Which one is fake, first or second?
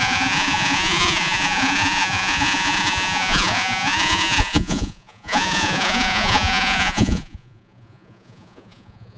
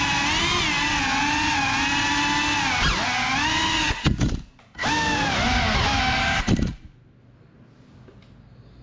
first